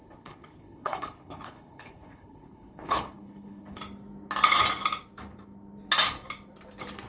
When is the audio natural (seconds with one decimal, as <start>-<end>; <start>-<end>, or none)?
3.8-7.1